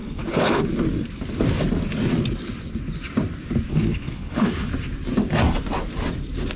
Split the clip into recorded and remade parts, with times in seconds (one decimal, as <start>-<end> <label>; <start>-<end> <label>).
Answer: 0.0-0.6 remade; 0.6-3.7 recorded; 3.7-4.7 remade; 4.7-6.6 recorded